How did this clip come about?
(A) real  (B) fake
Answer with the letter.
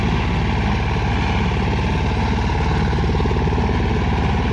A